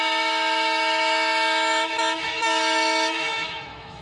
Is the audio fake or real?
fake